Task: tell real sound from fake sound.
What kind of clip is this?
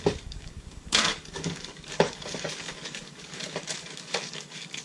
fake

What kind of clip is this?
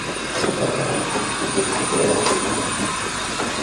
real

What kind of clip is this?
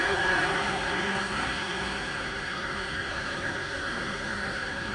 fake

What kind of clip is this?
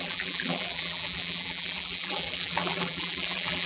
fake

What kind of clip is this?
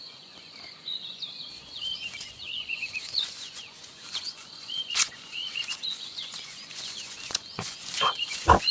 fake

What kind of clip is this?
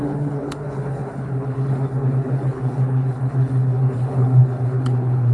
fake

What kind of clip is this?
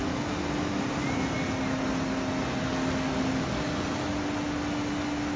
real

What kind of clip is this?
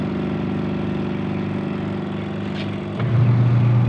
real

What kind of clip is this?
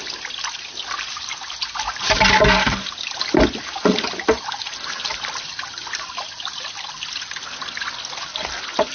real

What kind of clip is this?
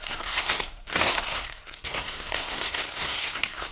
fake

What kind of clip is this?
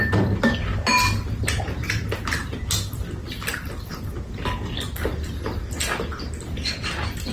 real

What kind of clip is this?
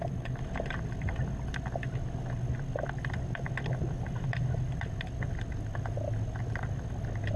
real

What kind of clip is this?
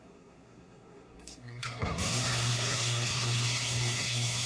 fake